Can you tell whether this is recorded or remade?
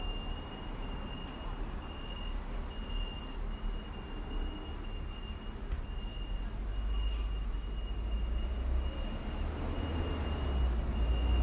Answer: recorded